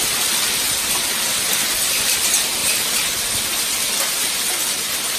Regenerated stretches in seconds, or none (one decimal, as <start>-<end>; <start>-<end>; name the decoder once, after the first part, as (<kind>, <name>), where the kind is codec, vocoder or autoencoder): none